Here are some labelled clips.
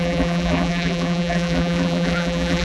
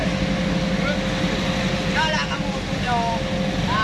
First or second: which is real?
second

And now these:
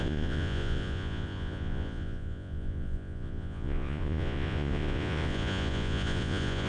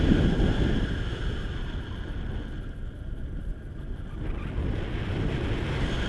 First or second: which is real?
second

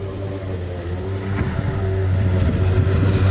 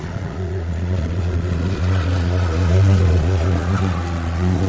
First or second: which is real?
first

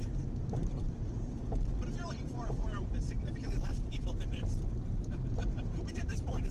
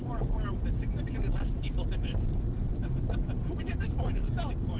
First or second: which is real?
second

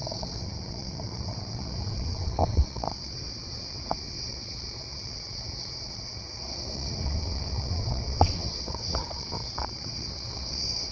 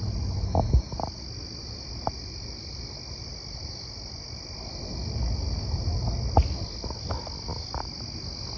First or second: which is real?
second